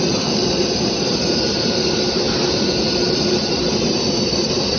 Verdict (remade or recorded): remade